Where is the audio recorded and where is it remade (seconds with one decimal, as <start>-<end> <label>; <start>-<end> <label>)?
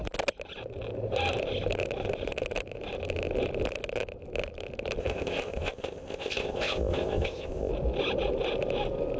0.0-5.0 recorded; 5.0-7.7 remade; 7.7-9.2 recorded